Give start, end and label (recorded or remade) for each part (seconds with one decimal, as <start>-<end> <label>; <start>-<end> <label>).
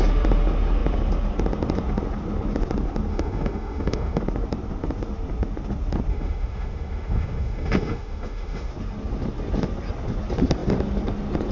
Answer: 0.0-3.1 recorded; 3.1-4.2 remade; 4.2-6.1 recorded; 6.1-8.7 remade; 8.7-11.5 recorded